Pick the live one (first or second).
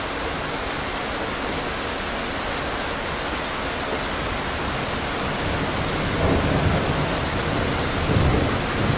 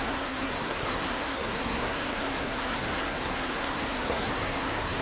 first